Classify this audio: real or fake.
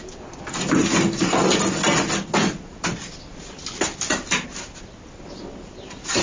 real